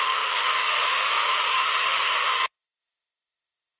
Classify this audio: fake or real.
fake